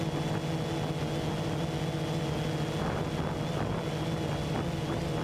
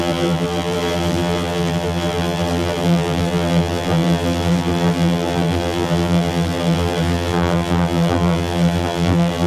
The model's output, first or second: second